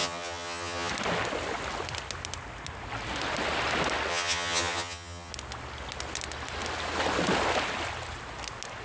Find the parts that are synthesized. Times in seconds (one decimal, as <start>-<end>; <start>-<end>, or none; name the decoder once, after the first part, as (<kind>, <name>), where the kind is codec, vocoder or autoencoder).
0.0-0.9 (vocoder, HiFi-GAN); 4.1-5.3